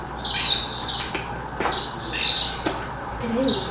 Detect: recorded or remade recorded